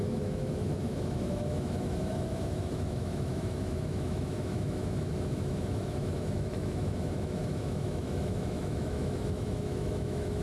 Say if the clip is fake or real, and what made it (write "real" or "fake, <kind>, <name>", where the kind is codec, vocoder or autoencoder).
fake, autoencoder, DAC-VAE